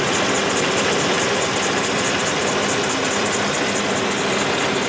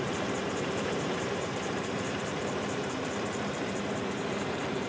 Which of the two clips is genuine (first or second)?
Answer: first